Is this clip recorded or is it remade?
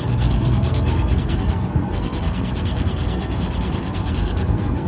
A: remade